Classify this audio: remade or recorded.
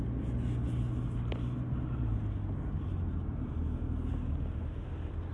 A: recorded